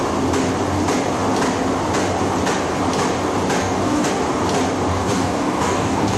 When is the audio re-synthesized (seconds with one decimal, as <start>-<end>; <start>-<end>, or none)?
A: 3.6-4.1; 4.9-6.2